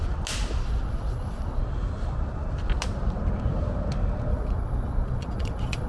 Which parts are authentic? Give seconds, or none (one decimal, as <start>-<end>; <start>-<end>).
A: 0.0-0.6; 1.6-4.3